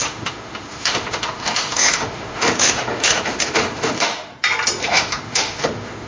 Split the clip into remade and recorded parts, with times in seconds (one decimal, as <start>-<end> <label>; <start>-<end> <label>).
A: 0.0-4.3 remade; 4.3-4.8 recorded; 4.8-6.1 remade